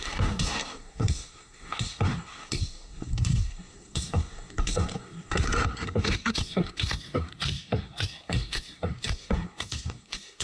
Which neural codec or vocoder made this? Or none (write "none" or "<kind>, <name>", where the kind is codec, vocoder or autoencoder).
codec, SNAC